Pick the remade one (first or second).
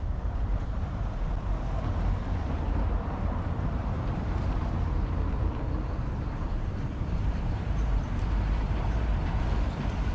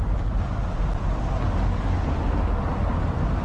first